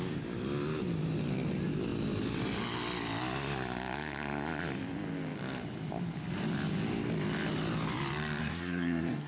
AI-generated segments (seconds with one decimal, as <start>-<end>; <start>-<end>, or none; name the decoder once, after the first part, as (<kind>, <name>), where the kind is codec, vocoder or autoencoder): 8.4-9.3 (codec, SNAC)